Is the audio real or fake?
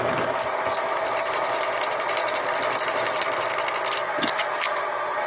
real